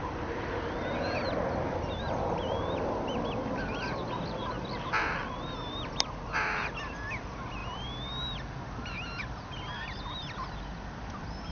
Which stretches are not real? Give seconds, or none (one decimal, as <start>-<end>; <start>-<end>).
none